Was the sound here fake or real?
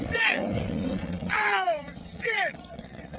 fake